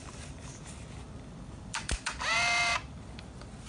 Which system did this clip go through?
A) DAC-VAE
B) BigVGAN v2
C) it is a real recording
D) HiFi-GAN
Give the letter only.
B